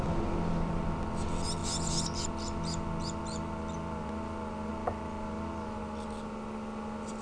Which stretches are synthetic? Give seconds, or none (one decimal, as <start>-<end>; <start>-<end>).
none